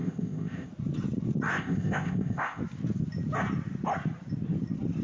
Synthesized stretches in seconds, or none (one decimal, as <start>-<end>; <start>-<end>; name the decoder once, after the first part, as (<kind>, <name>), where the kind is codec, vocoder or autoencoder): 0.0-0.7 (codec, ZipCodec); 1.5-2.6